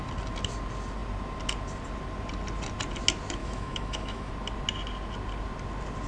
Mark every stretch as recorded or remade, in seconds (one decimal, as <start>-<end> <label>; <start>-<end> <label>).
0.0-3.4 recorded; 3.4-4.3 remade; 4.3-6.1 recorded